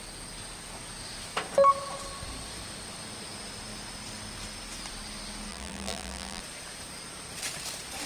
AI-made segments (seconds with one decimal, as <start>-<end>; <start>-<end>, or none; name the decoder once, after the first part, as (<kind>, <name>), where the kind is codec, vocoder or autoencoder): 5.5-6.4 (vocoder, BigVGAN v2)